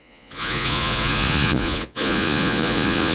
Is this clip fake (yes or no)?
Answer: yes